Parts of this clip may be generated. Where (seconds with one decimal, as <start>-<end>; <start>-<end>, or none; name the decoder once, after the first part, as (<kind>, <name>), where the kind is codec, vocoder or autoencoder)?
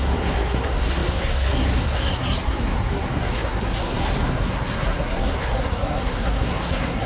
0.0-7.1 (codec, SNAC)